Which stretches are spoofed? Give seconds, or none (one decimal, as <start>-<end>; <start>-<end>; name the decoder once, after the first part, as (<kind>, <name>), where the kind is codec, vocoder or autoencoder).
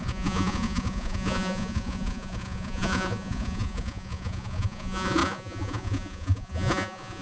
0.0-7.2 (vocoder, Vocos)